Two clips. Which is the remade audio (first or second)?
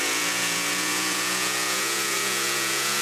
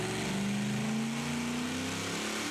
first